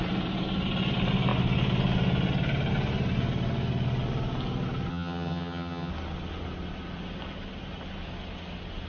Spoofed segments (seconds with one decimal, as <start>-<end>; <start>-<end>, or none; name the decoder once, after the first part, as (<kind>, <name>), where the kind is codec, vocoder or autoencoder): 4.9-5.9 (vocoder, HiFi-GAN)